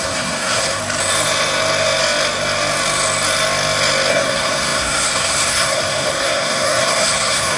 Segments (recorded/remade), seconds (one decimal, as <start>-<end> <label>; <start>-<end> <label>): 0.0-0.8 remade; 0.8-4.1 recorded; 4.1-7.6 remade